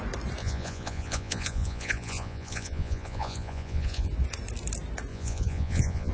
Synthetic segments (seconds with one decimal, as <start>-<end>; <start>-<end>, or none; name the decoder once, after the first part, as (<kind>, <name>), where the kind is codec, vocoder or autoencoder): 0.4-4.1 (vocoder, Vocos); 5.1-6.1